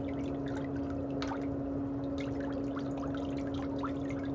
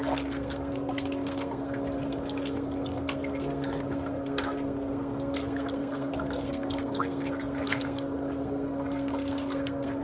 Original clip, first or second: first